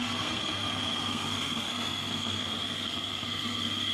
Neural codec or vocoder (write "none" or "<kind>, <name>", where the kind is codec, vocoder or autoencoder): codec, SNAC